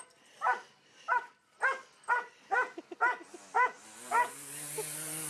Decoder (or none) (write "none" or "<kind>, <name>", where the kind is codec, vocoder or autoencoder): none